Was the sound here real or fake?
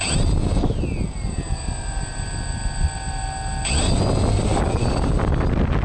real